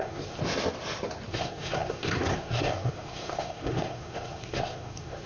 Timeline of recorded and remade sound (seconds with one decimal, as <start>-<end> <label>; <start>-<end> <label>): 0.0-0.4 remade; 0.4-1.3 recorded; 1.3-5.3 remade